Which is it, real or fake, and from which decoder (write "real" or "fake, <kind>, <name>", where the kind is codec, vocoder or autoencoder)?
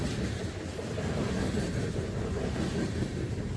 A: real